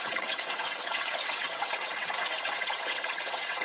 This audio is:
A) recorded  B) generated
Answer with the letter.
B